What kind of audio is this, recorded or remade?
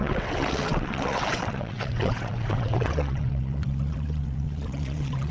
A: remade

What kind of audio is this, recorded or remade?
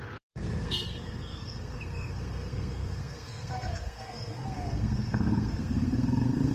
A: remade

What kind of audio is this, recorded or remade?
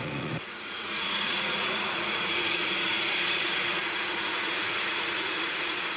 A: remade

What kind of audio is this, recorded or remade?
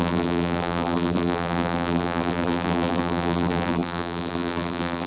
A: remade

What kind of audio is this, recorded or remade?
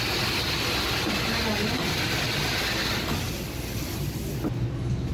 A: recorded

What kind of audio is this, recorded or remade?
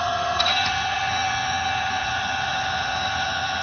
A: remade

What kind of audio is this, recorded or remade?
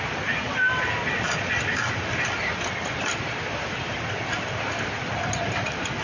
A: recorded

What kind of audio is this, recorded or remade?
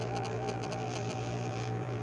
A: remade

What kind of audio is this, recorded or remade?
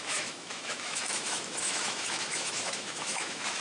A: remade